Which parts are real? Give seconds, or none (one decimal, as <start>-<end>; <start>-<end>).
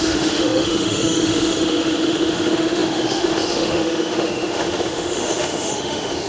none